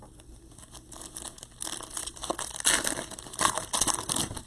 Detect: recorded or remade recorded